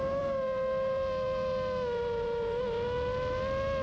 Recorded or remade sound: recorded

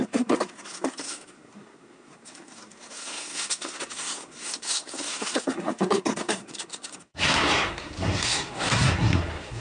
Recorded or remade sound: remade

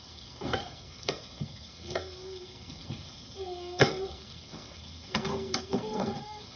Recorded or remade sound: remade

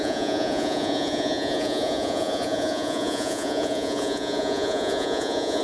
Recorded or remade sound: remade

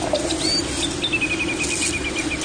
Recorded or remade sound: recorded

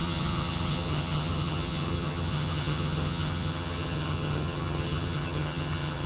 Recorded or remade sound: remade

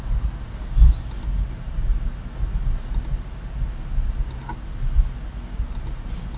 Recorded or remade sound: recorded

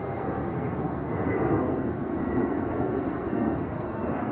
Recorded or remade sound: remade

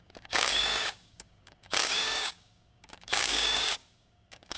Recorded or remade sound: remade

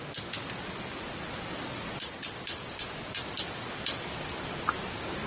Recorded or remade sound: recorded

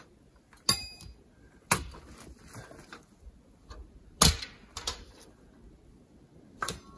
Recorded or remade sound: recorded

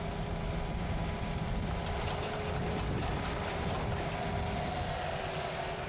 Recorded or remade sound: recorded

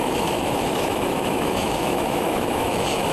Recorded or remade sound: remade